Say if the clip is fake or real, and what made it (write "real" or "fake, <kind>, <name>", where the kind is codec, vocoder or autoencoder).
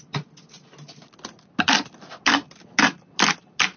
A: real